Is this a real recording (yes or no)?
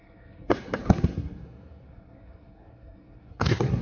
no